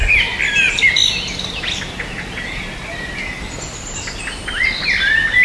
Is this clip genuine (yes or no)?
yes